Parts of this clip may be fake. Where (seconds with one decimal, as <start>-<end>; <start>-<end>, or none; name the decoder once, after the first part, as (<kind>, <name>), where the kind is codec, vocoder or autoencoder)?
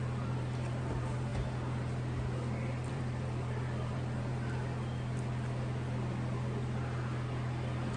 0.0-1.3 (vocoder, BigVGAN v2); 2.9-4.3